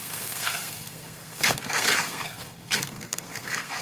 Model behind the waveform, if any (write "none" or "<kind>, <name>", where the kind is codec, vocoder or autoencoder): codec, SNAC